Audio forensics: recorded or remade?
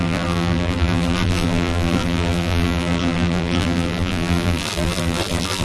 remade